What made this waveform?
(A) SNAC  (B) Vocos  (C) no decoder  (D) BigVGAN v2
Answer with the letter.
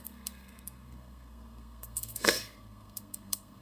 A